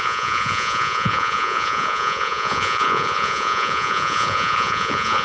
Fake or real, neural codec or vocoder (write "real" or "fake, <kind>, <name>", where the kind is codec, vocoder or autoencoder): fake, vocoder, Vocos